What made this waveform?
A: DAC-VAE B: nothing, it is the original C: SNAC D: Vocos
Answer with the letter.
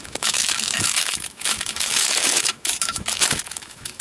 A